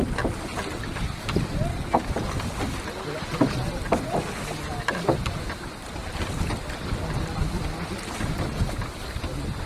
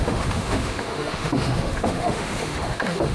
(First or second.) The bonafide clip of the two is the first